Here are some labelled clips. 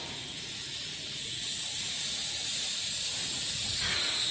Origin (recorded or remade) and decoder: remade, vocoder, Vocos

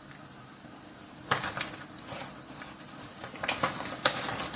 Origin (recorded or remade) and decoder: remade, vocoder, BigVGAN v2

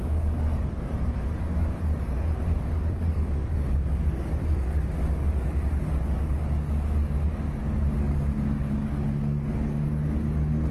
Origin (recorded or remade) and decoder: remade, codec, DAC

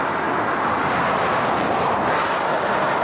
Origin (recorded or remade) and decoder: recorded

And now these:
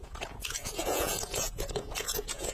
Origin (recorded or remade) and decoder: remade, vocoder, Vocos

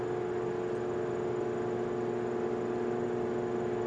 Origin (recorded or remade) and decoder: recorded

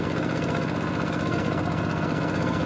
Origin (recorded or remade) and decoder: remade, codec, SNAC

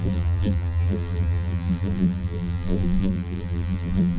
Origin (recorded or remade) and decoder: remade, vocoder, BigVGAN v2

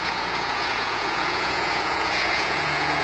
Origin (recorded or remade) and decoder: remade, vocoder, Vocos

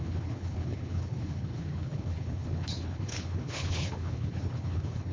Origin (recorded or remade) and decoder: remade, codec, HILCodec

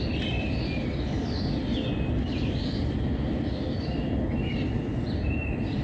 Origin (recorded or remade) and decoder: recorded